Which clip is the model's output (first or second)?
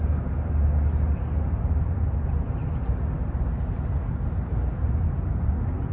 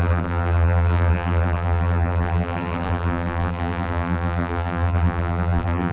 second